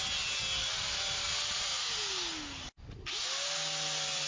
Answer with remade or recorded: recorded